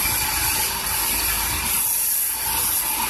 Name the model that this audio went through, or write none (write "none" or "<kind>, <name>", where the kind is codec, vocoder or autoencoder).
none